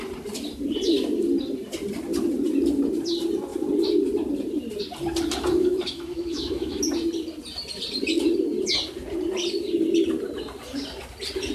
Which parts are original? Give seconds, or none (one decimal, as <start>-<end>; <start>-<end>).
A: 0.0-5.6; 6.8-11.5